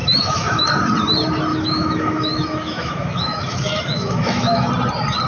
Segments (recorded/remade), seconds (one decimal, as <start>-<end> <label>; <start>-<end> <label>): 0.0-0.7 remade; 0.7-1.5 recorded; 1.5-4.7 remade; 4.7-5.3 recorded